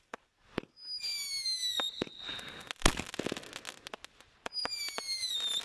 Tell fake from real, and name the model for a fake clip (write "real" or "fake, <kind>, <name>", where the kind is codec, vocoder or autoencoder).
real